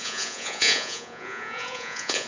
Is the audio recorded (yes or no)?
no